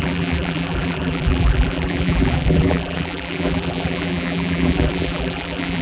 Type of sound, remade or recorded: remade